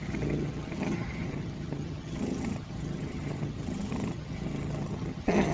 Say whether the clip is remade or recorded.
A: remade